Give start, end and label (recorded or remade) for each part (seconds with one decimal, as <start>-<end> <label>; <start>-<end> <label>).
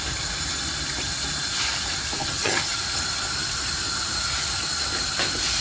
0.0-2.2 recorded; 2.2-2.8 remade; 2.8-5.6 recorded